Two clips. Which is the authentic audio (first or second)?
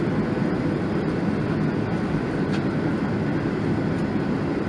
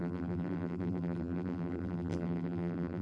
first